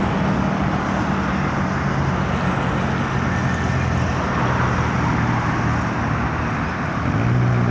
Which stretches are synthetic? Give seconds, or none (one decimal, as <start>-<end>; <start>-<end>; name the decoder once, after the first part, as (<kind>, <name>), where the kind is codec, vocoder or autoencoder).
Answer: none